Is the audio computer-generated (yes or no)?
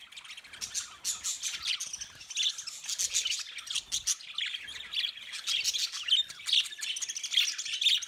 no